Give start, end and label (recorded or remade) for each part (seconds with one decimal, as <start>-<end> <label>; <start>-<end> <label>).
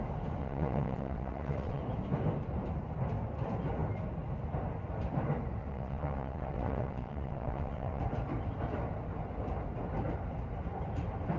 0.0-0.4 recorded; 0.4-1.8 remade; 1.8-5.6 recorded; 5.6-8.0 remade; 8.0-11.4 recorded